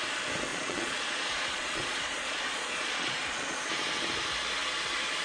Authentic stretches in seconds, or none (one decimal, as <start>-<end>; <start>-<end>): 0.0-0.5; 3.6-5.2